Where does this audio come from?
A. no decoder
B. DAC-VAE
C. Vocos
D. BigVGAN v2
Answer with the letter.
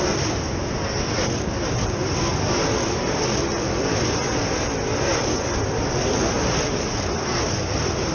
A